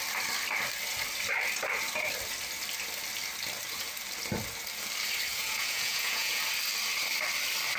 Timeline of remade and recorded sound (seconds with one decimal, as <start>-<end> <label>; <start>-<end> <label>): 0.0-5.3 recorded; 5.3-6.4 remade; 6.4-7.8 recorded